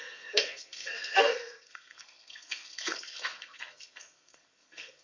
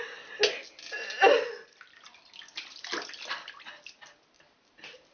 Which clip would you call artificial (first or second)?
first